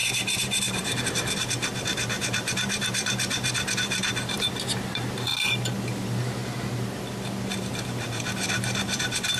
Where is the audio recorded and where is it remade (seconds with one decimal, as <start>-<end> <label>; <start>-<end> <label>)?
0.0-5.3 remade; 5.3-5.8 recorded; 5.8-6.4 remade; 6.4-7.6 recorded; 7.6-9.4 remade